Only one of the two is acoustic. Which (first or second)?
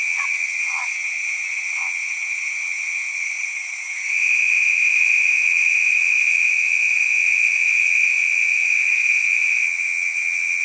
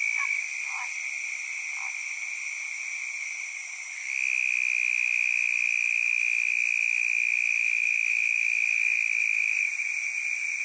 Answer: second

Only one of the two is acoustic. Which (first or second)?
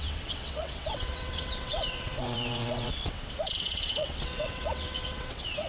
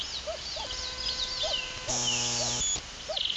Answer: second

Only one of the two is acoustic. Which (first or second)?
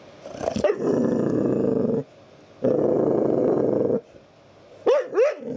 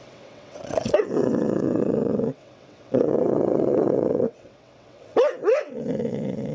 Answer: first